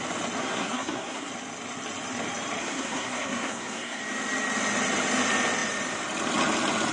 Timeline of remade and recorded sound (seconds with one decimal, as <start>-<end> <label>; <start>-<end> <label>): 0.0-0.4 recorded; 0.4-1.3 remade; 1.3-2.6 recorded; 2.6-4.0 remade; 4.0-6.9 recorded